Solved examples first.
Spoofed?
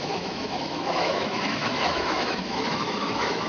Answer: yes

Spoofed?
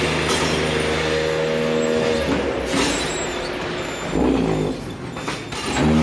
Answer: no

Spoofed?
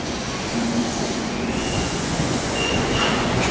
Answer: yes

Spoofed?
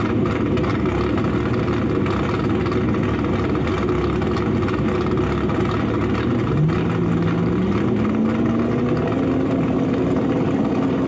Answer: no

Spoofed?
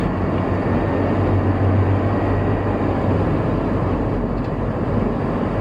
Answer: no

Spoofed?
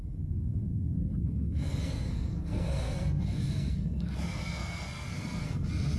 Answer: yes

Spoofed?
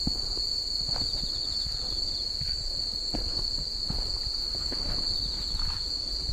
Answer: no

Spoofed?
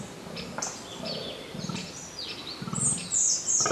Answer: no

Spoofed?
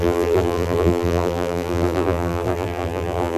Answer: yes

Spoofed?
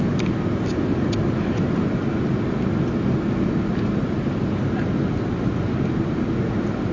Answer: no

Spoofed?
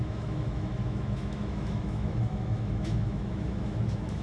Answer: yes